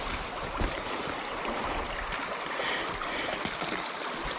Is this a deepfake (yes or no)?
no